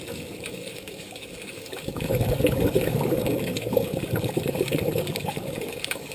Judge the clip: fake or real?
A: fake